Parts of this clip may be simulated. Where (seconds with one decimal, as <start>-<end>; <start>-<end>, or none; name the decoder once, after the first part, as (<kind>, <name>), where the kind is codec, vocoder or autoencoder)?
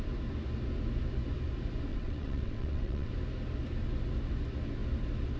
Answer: 1.9-3.1 (vocoder, WaveNeXt)